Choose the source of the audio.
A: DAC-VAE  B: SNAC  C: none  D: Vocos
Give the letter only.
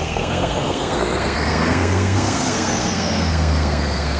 B